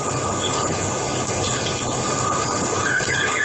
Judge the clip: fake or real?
fake